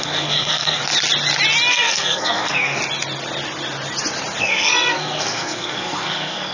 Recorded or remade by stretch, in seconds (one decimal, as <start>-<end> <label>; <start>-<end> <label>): 0.0-0.8 remade; 0.8-1.7 recorded; 1.7-2.8 remade; 2.8-4.4 recorded; 4.4-6.5 remade

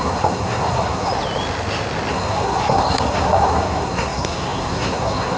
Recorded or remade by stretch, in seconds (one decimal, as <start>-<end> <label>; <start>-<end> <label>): 0.0-1.1 remade; 1.1-2.1 recorded; 2.1-5.4 remade

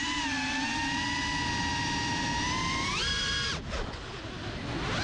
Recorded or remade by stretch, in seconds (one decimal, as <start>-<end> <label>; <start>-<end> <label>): 0.0-5.0 recorded

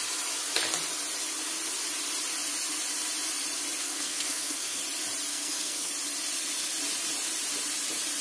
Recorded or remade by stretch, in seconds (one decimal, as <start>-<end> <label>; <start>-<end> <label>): 0.0-3.8 recorded; 3.8-4.8 remade; 4.8-5.3 recorded; 5.3-5.9 remade; 5.9-8.2 recorded

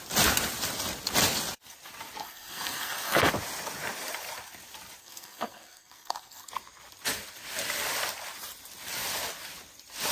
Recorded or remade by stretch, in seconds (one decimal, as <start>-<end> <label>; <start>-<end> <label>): 0.0-2.2 recorded; 2.2-3.3 remade; 3.3-5.0 recorded; 5.0-6.5 remade; 6.5-10.1 recorded

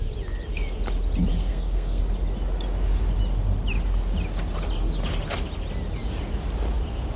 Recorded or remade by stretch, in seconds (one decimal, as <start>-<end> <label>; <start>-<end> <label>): 0.0-1.4 recorded; 1.4-2.0 remade; 2.0-7.2 recorded